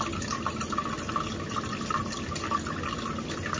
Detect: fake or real real